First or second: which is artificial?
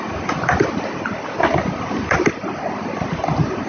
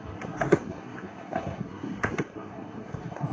second